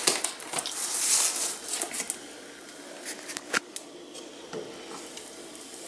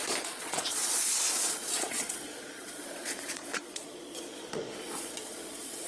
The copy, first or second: second